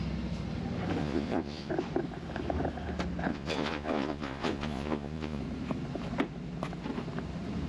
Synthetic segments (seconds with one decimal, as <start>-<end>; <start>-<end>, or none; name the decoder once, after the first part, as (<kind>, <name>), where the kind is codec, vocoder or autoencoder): 1.0-1.7 (vocoder, Vocos); 3.3-5.4